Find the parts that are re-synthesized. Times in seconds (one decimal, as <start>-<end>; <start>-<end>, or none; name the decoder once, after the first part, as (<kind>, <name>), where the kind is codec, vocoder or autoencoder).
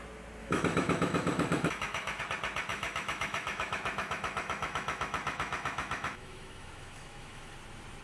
0.4-2.2 (autoencoder, DAC-VAE); 2.7-7.5